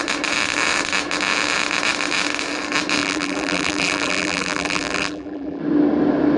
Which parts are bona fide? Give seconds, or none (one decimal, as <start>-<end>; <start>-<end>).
0.0-3.0; 5.6-6.4